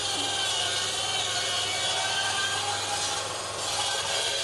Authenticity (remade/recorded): recorded